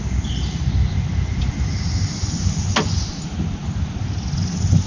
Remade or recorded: recorded